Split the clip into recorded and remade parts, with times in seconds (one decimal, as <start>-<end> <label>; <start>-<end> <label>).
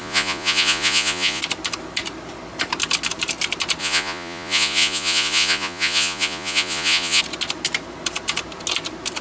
0.0-1.4 remade; 1.4-3.8 recorded; 3.8-7.2 remade; 7.2-9.2 recorded